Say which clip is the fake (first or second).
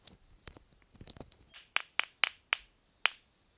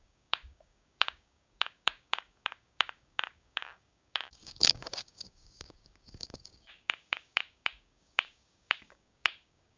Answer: second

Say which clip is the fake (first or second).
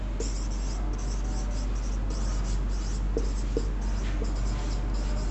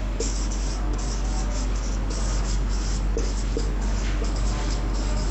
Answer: second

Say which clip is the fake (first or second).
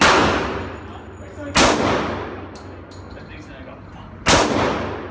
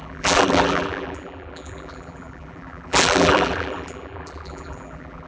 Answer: second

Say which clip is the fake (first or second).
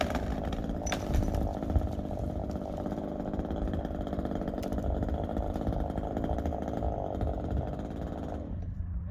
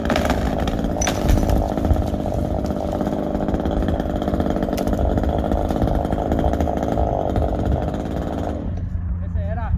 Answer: first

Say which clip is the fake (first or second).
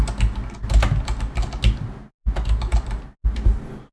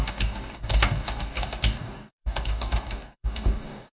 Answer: second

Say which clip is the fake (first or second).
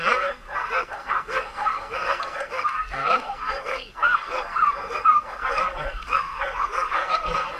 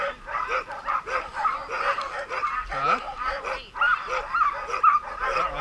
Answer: first